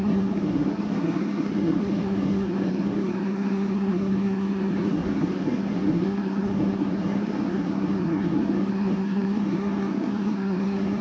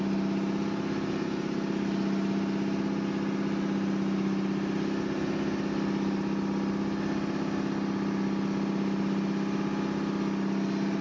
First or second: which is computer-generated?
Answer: first